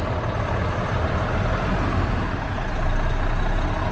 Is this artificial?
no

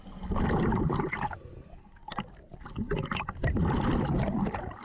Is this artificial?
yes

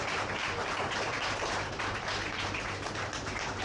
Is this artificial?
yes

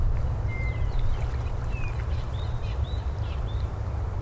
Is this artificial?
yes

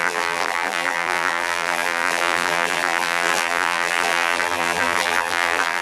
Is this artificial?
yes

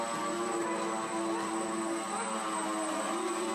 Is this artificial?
no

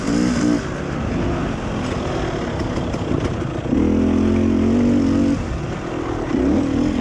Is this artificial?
no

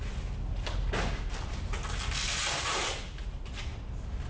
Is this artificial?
no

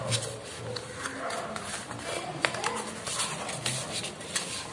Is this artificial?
no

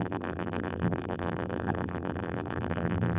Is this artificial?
yes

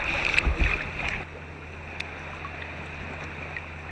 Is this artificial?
no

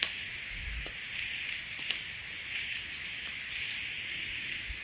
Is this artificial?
yes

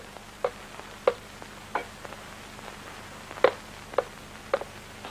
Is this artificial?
no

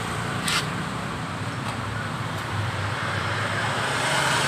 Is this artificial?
yes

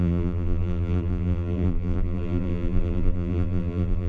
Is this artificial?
yes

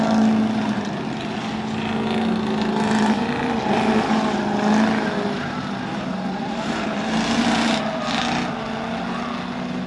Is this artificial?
no